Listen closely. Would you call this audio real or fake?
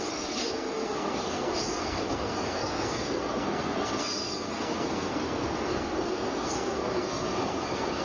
fake